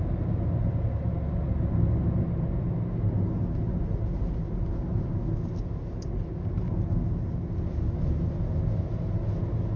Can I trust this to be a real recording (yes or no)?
yes